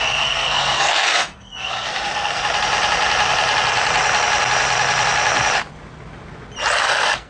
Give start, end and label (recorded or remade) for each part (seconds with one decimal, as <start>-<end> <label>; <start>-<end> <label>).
0.0-2.4 remade; 2.4-6.8 recorded; 6.8-7.3 remade